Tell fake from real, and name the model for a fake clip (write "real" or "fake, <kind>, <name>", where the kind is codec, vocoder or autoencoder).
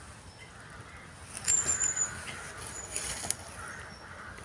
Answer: real